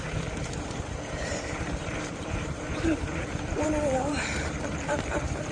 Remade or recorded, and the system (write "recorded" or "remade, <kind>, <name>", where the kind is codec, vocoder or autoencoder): remade, vocoder, BigVGAN v2